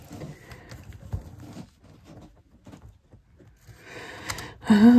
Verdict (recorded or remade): recorded